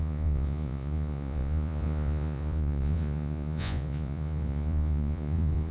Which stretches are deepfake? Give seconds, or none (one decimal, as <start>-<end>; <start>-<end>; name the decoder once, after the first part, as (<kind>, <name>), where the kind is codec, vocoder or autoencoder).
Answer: 0.0-5.7 (vocoder, Vocos)